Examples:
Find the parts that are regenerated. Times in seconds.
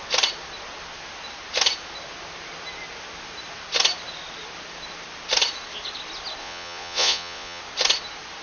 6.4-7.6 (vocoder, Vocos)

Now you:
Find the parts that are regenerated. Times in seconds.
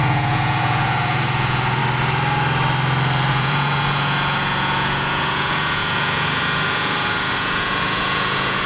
0.0-1.8 (vocoder, Vocos); 3.3-8.7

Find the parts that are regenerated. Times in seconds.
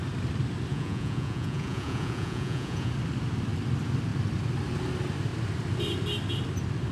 0.7-2.9 (vocoder, Vocos)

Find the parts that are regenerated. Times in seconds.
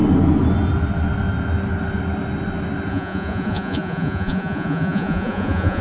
2.9-5.8 (vocoder, Vocos)